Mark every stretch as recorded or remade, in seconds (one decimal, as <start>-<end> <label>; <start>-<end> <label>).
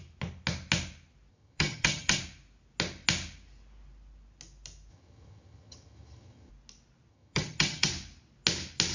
0.0-1.3 recorded; 1.3-2.2 remade; 2.2-4.9 recorded; 4.9-6.5 remade; 6.5-7.1 recorded; 7.1-7.9 remade; 7.9-8.9 recorded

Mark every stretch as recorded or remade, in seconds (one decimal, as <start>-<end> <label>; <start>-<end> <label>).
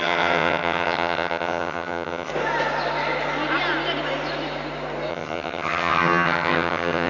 0.0-2.3 remade; 2.3-5.1 recorded; 5.1-7.1 remade